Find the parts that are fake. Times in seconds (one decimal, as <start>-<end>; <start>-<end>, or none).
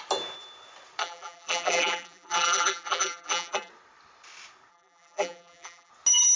1.0-3.7; 4.7-5.9